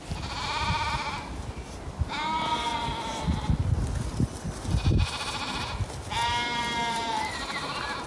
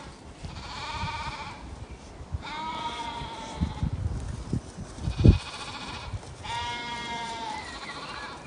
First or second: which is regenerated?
second